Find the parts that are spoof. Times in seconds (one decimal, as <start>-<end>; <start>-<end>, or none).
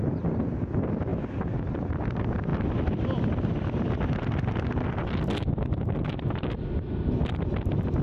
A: none